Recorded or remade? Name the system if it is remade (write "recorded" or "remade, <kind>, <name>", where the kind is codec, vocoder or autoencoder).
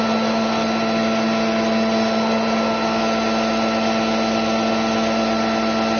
recorded